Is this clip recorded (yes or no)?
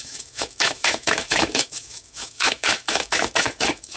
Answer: no